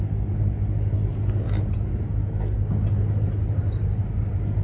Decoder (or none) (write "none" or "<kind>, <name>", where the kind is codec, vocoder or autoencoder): none